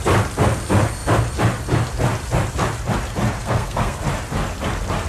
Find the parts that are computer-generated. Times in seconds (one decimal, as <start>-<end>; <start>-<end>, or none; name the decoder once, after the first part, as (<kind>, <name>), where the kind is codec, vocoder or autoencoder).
3.4-4.0 (codec, SNAC)